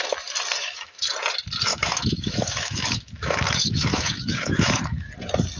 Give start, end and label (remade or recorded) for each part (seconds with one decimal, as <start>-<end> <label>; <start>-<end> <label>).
0.0-0.6 recorded; 0.6-1.1 remade; 1.1-1.7 recorded; 1.7-5.1 remade; 5.1-5.6 recorded